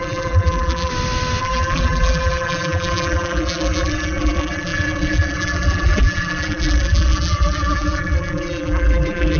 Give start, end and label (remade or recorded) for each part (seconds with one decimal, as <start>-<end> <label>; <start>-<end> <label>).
0.0-0.9 remade; 0.9-1.4 recorded; 1.4-9.4 remade